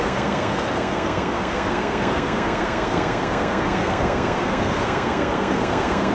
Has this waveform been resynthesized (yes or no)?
yes